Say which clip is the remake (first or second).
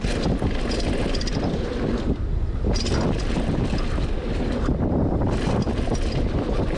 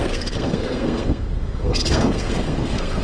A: second